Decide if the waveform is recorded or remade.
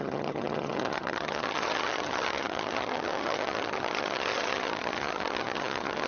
remade